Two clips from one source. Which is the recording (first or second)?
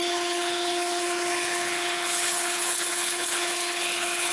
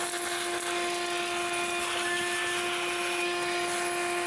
second